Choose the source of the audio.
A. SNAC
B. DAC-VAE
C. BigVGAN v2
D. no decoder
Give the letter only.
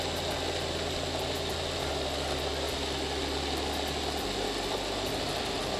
D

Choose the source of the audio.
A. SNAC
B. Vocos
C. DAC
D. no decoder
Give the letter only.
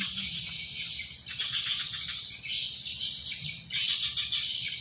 D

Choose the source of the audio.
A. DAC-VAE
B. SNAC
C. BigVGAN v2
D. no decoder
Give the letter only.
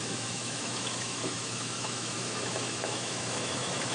A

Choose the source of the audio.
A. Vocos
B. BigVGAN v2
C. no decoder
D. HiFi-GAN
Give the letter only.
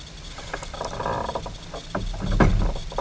C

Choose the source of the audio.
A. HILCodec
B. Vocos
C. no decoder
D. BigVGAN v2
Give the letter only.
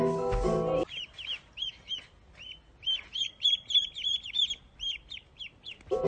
C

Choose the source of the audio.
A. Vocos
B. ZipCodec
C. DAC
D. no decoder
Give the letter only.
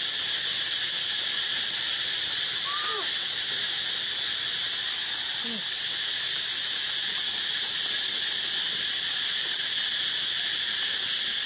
D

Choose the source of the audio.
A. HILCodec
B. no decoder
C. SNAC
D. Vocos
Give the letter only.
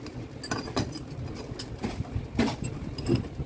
B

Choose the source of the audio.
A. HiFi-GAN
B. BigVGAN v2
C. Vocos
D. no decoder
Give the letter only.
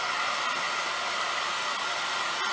D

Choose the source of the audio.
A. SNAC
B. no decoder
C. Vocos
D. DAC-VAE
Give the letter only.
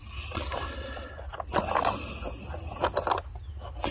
B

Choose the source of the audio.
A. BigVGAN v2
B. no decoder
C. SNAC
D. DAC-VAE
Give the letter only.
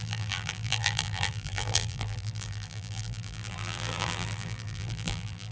A